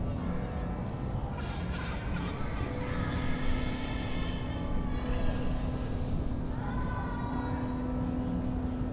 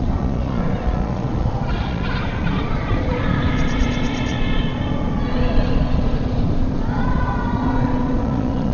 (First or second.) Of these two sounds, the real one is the first